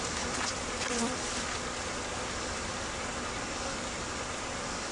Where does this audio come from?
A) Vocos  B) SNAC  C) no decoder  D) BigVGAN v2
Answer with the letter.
D